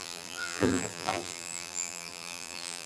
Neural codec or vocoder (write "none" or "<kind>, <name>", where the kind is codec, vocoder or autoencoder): vocoder, BigVGAN v2